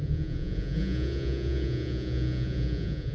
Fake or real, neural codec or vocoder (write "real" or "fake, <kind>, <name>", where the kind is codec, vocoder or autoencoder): fake, vocoder, Vocos